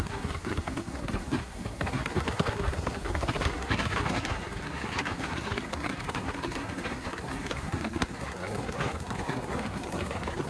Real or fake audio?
fake